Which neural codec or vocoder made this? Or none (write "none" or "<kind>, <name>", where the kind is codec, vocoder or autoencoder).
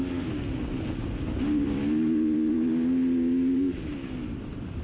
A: none